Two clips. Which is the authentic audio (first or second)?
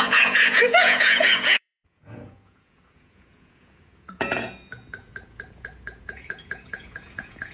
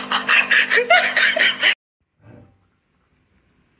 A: second